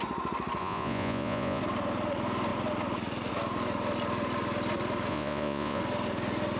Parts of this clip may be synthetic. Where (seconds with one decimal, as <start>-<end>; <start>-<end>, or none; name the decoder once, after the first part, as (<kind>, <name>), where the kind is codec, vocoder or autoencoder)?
0.6-1.6 (vocoder, Vocos); 5.1-5.8